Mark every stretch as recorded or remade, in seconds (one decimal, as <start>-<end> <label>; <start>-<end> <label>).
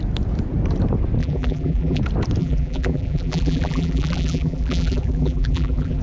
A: 0.0-1.2 recorded; 1.2-2.0 remade; 2.0-2.4 recorded; 2.4-6.0 remade